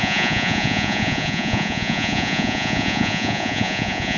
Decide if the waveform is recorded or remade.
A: remade